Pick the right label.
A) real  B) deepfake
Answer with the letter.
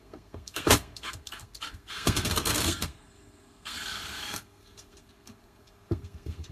B